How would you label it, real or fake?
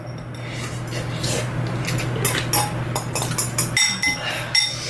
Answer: real